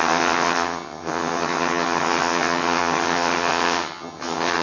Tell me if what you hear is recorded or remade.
remade